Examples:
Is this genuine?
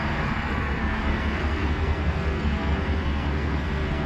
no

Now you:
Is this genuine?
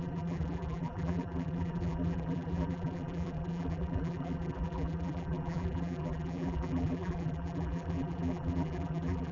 no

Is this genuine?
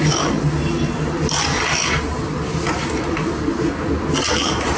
yes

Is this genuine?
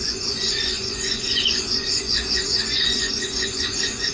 no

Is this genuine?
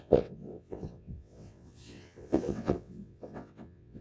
no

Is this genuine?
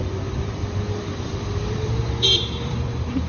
no